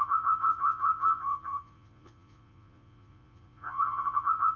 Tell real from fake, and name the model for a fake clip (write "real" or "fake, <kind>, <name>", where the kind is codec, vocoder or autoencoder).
fake, vocoder, Vocos